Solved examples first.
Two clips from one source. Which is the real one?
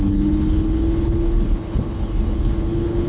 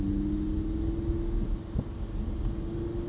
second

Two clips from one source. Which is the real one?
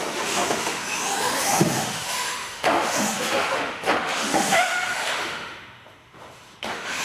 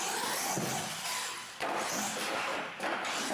second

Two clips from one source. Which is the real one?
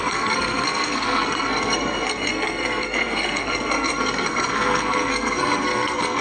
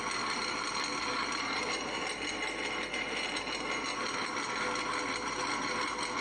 second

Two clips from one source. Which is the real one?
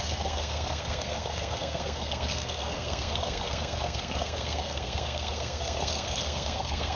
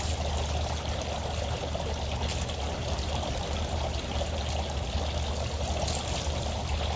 second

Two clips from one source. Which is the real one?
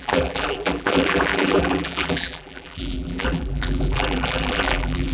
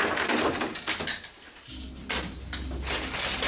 second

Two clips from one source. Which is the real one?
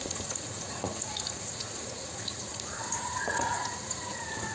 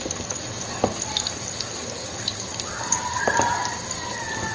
second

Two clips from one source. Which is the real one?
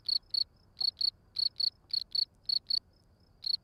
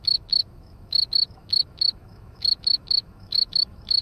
first